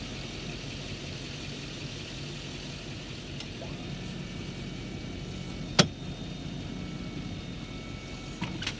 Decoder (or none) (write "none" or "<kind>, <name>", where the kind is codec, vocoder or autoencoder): none